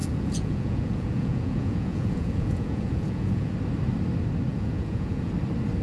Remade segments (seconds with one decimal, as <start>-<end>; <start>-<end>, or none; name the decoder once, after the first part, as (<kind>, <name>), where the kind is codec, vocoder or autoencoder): 0.0-3.5 (vocoder, Vocos); 4.5-5.3